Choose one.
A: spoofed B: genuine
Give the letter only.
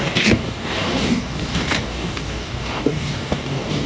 A